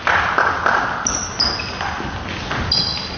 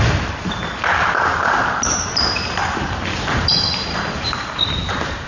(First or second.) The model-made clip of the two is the second